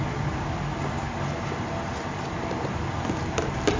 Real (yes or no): yes